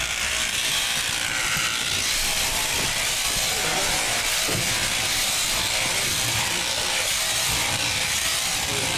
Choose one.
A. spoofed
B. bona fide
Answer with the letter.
A